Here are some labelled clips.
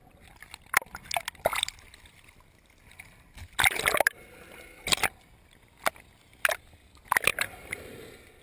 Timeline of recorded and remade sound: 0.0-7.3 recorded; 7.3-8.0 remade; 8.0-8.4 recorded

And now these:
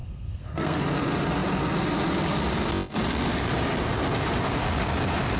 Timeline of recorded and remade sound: 0.0-0.8 remade; 0.8-5.4 recorded

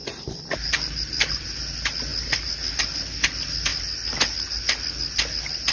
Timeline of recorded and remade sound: 0.0-1.6 remade; 1.6-5.7 recorded

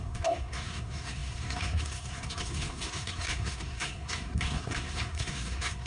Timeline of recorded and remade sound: 0.0-5.9 remade

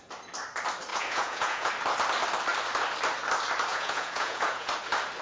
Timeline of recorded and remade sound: 0.0-0.9 recorded; 0.9-1.7 remade; 1.7-3.7 recorded; 3.7-4.7 remade; 4.7-5.2 recorded

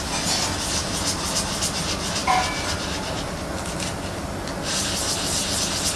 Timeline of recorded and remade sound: 0.0-2.2 recorded; 2.2-5.6 remade; 5.6-6.0 recorded